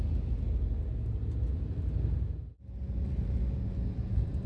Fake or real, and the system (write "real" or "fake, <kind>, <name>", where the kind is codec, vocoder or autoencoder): real